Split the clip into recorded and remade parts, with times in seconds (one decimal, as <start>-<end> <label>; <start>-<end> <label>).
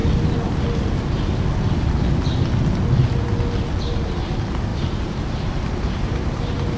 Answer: 0.0-4.7 recorded; 4.7-6.8 remade